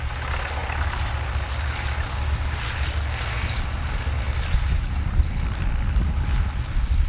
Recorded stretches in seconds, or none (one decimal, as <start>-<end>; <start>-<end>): 0.0-7.1